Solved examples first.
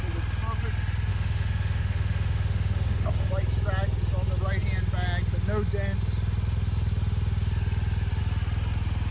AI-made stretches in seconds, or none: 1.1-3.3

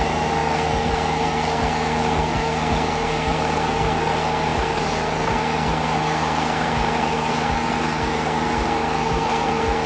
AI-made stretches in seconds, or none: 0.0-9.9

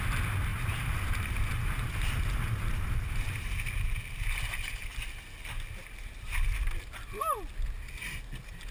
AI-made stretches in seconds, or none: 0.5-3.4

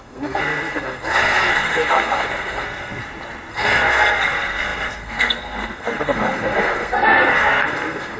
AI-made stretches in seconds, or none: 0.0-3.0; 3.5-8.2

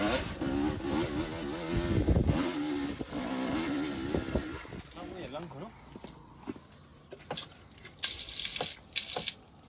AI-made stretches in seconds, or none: none

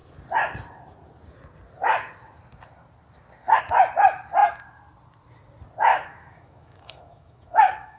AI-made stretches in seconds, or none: 5.9-8.0